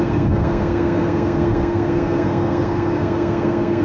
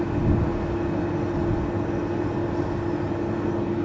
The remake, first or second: first